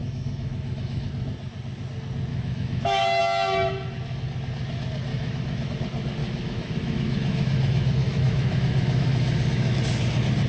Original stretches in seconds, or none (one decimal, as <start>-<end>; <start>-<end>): 1.1-2.3; 3.2-5.1; 5.7-6.2; 9.8-10.5